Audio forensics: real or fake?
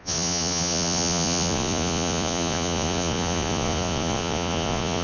fake